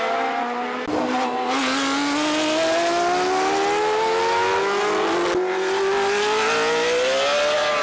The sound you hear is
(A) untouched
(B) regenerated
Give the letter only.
A